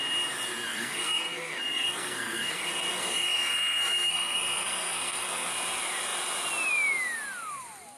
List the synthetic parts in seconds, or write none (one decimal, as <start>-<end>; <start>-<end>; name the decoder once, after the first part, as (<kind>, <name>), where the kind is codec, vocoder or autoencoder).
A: 0.7-5.5 (codec, SNAC)